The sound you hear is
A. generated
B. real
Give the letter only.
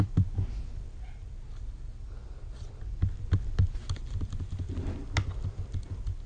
B